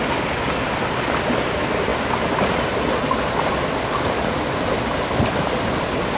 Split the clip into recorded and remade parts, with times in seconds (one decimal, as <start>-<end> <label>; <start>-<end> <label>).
0.0-6.2 recorded